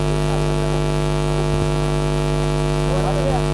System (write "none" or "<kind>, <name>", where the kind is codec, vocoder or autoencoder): none